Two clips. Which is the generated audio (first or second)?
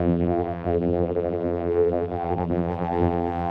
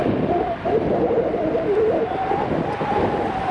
first